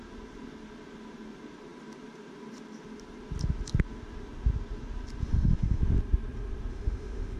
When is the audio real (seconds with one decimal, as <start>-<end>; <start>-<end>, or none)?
0.0-5.2; 5.8-6.7